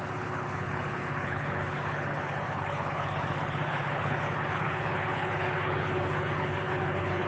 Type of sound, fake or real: fake